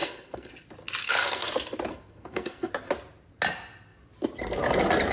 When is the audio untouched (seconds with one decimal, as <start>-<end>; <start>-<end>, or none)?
0.5-1.0; 1.5-1.9; 2.7-5.1